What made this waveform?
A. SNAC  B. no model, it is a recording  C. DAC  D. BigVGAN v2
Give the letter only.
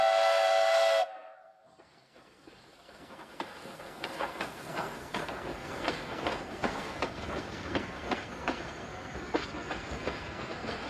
A